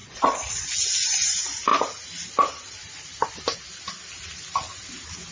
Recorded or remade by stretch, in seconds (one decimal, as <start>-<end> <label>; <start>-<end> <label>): 0.0-0.7 remade; 0.7-5.3 recorded